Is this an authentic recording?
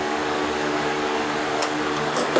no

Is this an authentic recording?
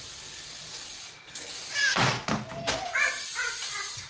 yes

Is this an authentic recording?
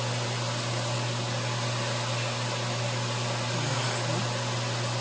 yes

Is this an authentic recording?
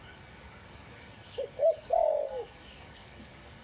no